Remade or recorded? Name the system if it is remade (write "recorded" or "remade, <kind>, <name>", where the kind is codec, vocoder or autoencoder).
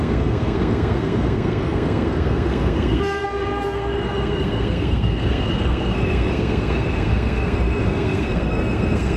remade, codec, SNAC